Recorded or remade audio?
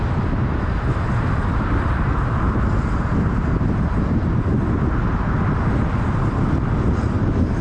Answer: recorded